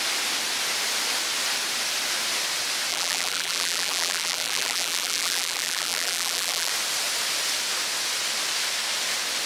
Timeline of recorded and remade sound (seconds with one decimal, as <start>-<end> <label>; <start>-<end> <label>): 0.0-2.9 recorded; 2.9-6.7 remade; 6.7-9.5 recorded